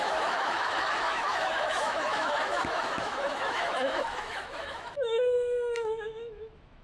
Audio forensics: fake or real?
fake